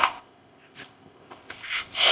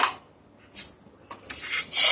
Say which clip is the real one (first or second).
second